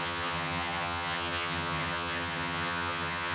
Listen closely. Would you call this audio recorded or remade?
remade